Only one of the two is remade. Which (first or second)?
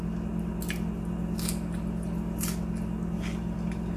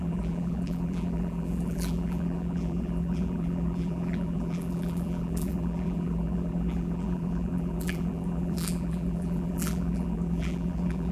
second